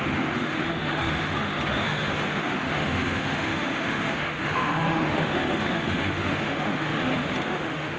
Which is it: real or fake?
fake